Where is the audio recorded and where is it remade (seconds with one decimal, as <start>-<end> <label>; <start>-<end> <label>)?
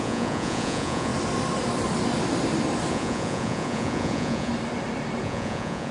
0.0-1.1 remade; 1.1-2.9 recorded; 2.9-4.5 remade; 4.5-5.2 recorded; 5.2-5.9 remade